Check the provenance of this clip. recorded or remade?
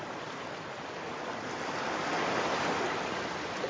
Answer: recorded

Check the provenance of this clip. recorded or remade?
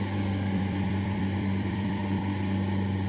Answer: remade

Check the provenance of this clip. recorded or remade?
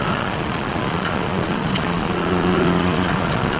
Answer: remade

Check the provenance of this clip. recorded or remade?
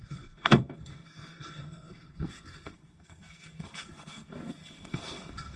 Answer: remade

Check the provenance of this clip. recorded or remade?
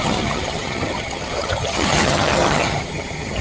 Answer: remade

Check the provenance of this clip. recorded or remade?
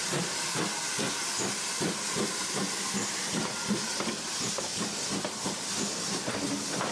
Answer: recorded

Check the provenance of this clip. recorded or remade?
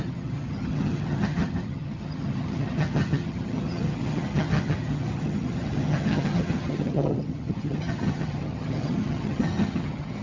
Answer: remade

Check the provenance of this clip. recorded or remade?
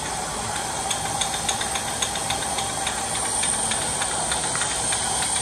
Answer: recorded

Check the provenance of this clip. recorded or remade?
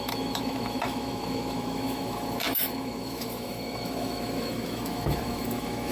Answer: remade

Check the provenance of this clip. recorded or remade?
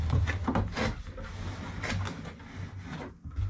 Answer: recorded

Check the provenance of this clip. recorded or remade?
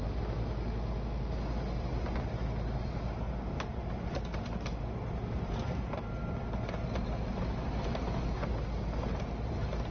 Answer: recorded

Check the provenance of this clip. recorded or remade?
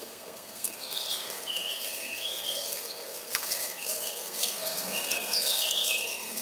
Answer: remade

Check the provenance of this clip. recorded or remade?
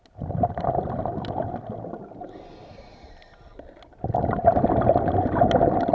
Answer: recorded